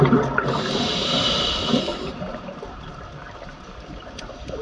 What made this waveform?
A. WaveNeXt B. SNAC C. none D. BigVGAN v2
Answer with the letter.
D